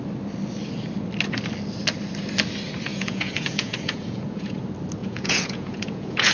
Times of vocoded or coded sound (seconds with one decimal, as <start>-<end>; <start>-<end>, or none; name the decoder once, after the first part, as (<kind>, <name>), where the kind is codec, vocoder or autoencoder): 2.9-4.6 (vocoder, Vocos); 5.0-6.3

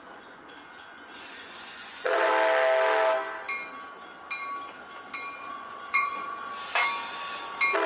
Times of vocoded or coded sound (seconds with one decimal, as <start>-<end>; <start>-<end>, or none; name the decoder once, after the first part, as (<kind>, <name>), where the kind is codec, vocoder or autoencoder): 0.0-2.3 (vocoder, Vocos); 5.4-6.5